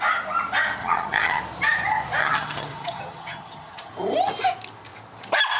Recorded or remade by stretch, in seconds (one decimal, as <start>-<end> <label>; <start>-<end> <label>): 0.0-0.8 recorded; 0.8-1.4 remade; 1.4-2.2 recorded; 2.2-3.9 remade; 3.9-5.6 recorded